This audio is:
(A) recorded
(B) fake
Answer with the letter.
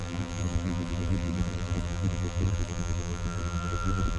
B